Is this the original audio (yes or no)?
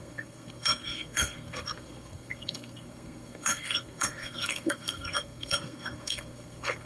no